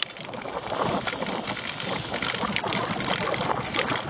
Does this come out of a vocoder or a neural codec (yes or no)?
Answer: no